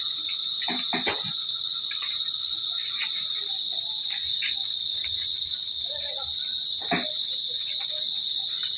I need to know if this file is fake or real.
fake